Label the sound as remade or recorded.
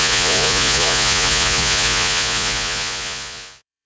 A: remade